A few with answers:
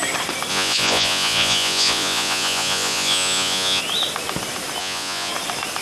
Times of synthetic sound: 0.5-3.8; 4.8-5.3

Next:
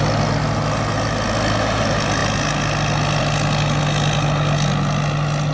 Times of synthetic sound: none

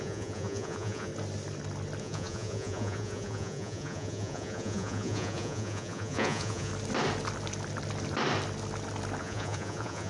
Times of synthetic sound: 0.0-1.1; 2.0-6.7; 9.2-10.1

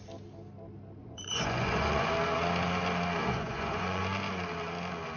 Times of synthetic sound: 1.0-2.1; 3.2-4.0

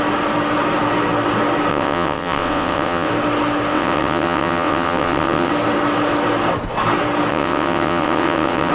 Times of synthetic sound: 1.7-3.1; 3.7-5.5; 7.3-8.7